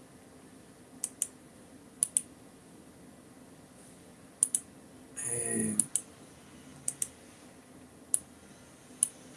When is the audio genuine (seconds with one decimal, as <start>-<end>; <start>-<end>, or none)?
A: 0.0-9.4